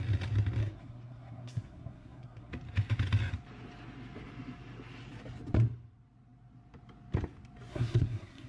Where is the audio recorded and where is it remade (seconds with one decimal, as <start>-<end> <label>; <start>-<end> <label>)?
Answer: 0.0-0.6 recorded; 0.6-2.5 remade; 2.5-7.7 recorded; 7.7-8.5 remade